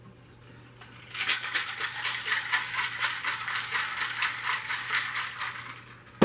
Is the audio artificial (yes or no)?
no